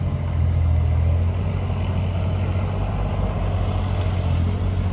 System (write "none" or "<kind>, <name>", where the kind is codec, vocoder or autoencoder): none